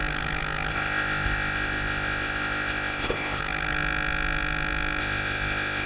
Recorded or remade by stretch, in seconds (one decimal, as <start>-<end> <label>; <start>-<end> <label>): 0.0-0.7 recorded; 0.7-3.4 remade; 3.4-5.0 recorded; 5.0-5.9 remade

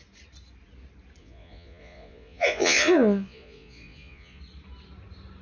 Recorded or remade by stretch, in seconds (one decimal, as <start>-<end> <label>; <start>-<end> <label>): 0.0-1.2 recorded; 1.2-4.4 remade; 4.4-5.4 recorded

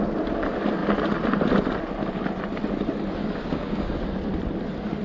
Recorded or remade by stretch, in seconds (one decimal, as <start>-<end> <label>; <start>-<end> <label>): 0.0-3.2 recorded; 3.2-4.0 remade; 4.0-5.0 recorded